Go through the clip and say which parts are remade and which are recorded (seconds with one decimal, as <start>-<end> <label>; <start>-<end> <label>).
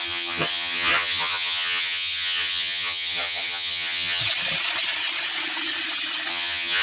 0.0-4.2 remade; 4.2-6.3 recorded; 6.3-6.8 remade